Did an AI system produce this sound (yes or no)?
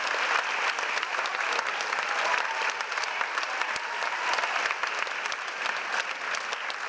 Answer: no